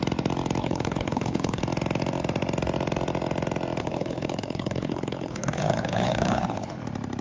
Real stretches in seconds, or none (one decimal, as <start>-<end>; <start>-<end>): 0.0-0.6; 1.6-3.8; 6.8-7.2